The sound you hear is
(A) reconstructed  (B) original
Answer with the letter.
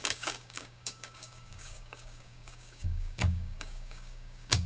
A